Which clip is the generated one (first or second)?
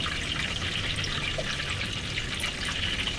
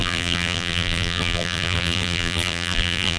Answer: second